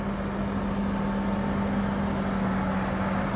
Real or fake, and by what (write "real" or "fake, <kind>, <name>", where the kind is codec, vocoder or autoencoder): real